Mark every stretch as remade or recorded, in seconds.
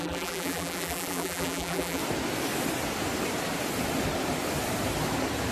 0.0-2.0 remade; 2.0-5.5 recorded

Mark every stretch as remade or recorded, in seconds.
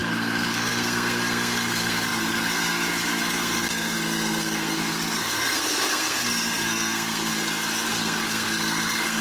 0.0-7.3 remade; 7.3-7.9 recorded; 7.9-9.2 remade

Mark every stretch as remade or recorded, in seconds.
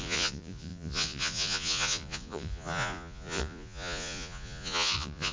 0.0-5.3 remade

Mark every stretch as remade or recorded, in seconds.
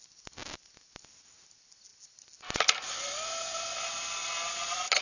0.0-5.0 recorded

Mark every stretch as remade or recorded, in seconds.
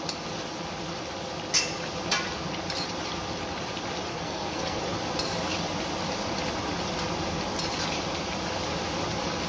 0.0-4.1 recorded; 4.1-4.8 remade; 4.8-9.5 recorded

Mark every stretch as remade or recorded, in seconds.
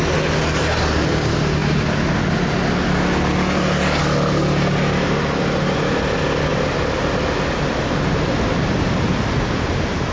0.0-10.1 recorded